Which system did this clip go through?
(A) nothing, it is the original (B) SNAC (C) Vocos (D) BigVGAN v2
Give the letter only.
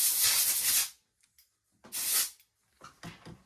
A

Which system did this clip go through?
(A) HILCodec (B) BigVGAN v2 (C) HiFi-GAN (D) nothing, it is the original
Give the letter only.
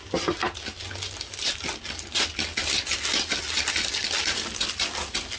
D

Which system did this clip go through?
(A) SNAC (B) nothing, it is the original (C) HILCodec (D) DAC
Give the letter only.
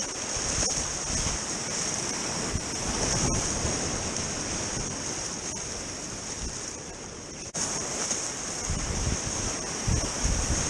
B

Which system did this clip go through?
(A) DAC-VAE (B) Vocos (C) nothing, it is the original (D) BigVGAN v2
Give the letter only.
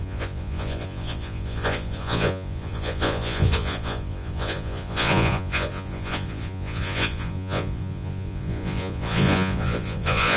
B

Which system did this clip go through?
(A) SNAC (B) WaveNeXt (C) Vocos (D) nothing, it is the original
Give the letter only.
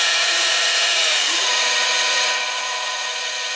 C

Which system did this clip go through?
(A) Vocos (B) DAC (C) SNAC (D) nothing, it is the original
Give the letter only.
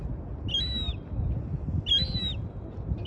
D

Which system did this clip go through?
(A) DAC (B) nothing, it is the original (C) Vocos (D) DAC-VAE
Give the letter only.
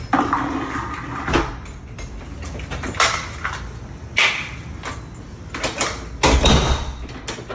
B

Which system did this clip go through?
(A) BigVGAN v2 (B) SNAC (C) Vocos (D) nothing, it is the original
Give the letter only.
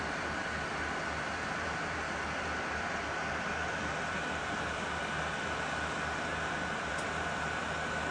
A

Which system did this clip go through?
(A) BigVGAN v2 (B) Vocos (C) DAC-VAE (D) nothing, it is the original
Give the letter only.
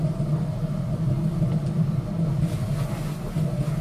D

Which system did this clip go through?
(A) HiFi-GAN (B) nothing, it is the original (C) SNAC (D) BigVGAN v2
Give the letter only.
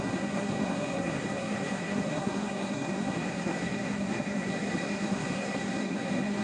C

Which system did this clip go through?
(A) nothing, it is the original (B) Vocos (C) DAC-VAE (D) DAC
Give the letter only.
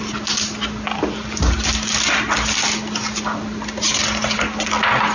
A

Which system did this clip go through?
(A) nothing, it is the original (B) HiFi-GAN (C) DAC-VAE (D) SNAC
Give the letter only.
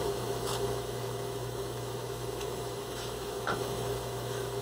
C